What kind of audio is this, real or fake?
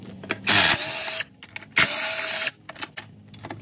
real